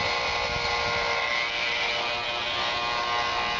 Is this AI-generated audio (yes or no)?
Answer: no